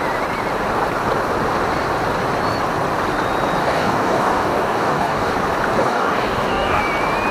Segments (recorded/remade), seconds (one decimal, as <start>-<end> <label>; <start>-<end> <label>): 0.0-3.6 recorded; 3.6-5.3 remade; 5.3-5.8 recorded; 5.8-6.8 remade; 6.8-7.3 recorded